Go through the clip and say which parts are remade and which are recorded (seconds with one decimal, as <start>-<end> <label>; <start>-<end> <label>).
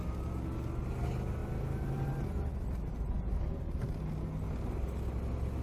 0.0-5.6 recorded